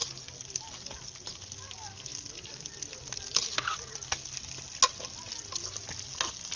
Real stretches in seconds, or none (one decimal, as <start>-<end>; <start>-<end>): 0.0-6.6